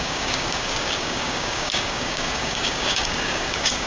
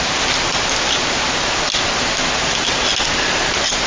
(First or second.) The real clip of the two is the second